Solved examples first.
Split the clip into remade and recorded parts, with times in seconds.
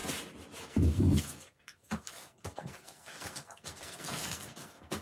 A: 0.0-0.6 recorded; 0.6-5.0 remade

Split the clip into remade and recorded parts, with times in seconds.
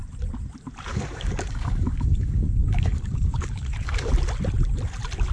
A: 0.0-0.9 recorded; 0.9-4.1 remade; 4.1-5.3 recorded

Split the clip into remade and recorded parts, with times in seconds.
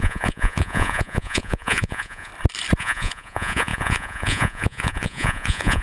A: 0.0-2.3 remade; 2.3-2.8 recorded; 2.8-5.8 remade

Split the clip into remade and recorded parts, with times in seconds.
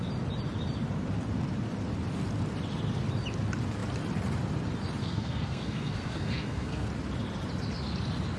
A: 0.0-5.0 recorded; 5.0-6.9 remade; 6.9-8.4 recorded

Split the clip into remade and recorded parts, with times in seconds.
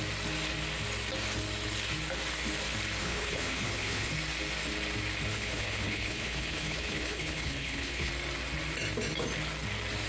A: 0.0-3.0 recorded; 3.0-4.1 remade; 4.1-5.3 recorded; 5.3-8.1 remade; 8.1-10.1 recorded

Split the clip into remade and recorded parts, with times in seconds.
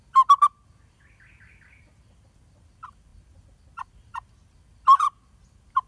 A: 0.0-5.9 recorded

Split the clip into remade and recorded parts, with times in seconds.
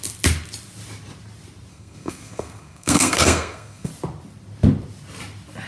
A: 0.0-1.7 recorded; 1.7-3.9 remade; 3.9-5.7 recorded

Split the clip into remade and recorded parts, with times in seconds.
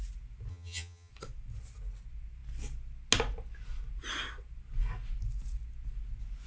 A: 0.0-0.5 recorded; 0.5-1.1 remade; 1.1-6.5 recorded